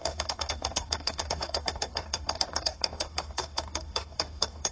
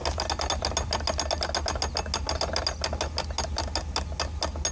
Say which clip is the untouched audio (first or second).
second